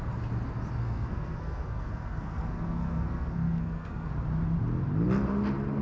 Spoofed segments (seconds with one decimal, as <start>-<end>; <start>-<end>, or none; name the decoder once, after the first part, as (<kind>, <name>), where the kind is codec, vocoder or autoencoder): 0.8-4.1 (codec, SNAC)